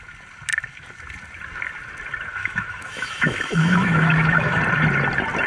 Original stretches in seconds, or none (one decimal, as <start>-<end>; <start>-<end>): 0.0-2.4; 4.6-5.5